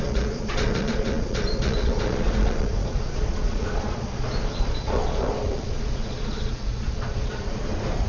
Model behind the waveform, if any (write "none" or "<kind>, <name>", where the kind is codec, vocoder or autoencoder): vocoder, Vocos